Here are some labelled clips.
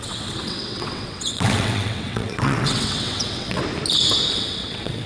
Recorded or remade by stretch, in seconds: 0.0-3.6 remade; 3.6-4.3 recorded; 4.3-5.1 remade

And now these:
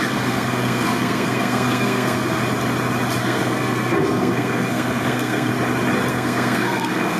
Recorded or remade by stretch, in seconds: 0.0-2.4 remade; 2.4-3.2 recorded; 3.2-5.5 remade; 5.5-6.1 recorded; 6.1-7.2 remade

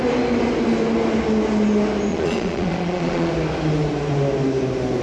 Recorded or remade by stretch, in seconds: 0.0-2.1 recorded; 2.1-3.3 remade; 3.3-5.0 recorded

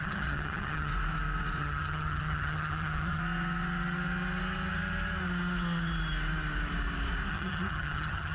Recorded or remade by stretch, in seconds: 0.0-0.9 remade; 0.9-1.6 recorded; 1.6-3.2 remade; 3.2-7.3 recorded; 7.3-8.3 remade

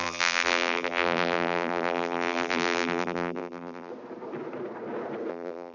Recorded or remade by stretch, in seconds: 0.0-3.9 remade; 3.9-5.3 recorded; 5.3-5.7 remade